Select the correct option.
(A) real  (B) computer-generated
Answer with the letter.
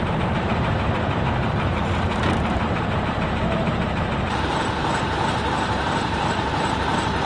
B